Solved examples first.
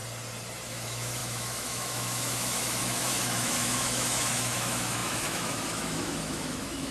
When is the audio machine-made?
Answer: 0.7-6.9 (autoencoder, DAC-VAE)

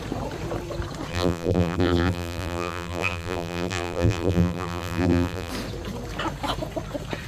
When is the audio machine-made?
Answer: 1.1-5.5 (vocoder, BigVGAN v2)

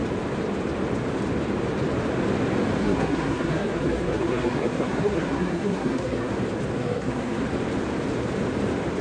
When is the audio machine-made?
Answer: 2.8-6.3 (codec, SNAC); 6.8-7.4

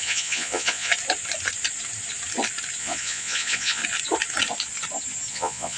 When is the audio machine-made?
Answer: 0.0-0.9 (vocoder, Vocos); 2.8-3.8; 5.3-5.8